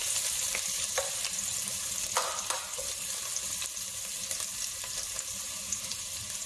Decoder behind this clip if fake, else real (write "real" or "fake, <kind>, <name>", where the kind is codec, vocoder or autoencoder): fake, vocoder, BigVGAN v2